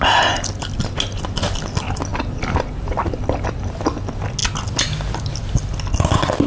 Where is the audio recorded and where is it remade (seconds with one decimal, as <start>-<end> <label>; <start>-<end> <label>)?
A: 0.0-6.5 recorded